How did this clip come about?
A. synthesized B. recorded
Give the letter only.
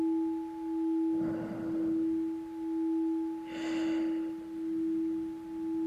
B